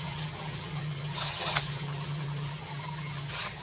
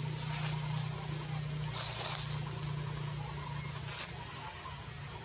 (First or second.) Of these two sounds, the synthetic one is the first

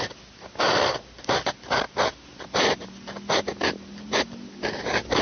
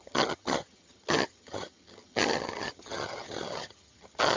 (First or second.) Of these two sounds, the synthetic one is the second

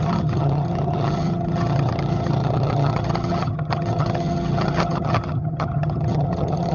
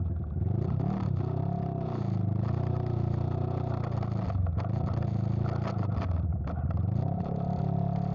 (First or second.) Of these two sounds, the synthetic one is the first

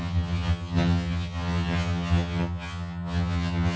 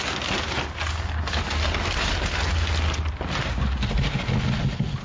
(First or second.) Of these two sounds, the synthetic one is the first